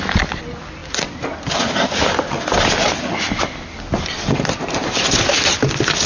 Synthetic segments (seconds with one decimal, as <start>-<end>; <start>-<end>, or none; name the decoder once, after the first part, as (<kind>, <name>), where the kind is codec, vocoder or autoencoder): none